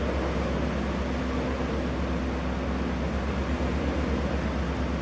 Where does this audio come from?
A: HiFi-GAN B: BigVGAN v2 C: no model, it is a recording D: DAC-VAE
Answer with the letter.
C